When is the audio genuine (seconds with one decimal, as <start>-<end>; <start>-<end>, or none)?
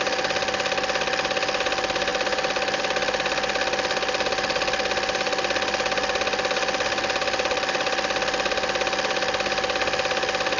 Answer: 0.0-10.6